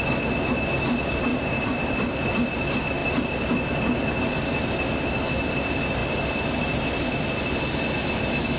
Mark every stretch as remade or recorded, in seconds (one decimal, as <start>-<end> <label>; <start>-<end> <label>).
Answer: 0.0-1.3 recorded; 1.3-1.9 remade; 1.9-8.6 recorded

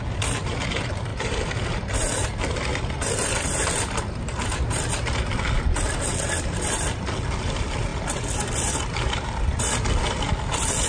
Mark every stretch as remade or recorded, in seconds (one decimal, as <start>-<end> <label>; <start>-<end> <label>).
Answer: 0.0-1.1 recorded; 1.1-4.0 remade; 4.0-10.9 recorded

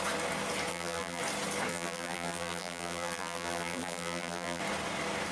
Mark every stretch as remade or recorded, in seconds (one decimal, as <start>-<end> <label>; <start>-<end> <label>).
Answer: 0.0-0.7 recorded; 0.7-1.2 remade; 1.2-1.7 recorded; 1.7-4.6 remade; 4.6-5.3 recorded